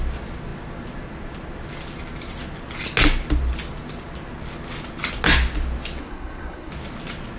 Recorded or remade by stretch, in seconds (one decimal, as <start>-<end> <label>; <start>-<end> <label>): 0.0-6.0 recorded; 6.0-6.7 remade; 6.7-7.4 recorded